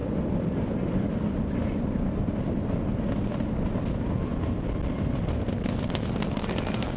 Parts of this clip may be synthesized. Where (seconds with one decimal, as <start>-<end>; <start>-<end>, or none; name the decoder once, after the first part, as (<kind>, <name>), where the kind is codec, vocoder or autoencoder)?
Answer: 0.0-2.4 (vocoder, BigVGAN v2); 4.3-5.5